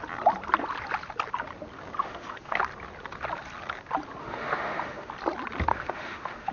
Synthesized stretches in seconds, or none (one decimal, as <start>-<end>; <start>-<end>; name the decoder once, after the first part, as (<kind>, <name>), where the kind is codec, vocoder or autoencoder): 2.0-2.6 (autoencoder, DAC-VAE); 4.2-5.1; 5.7-6.5